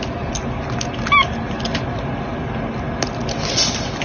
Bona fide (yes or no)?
yes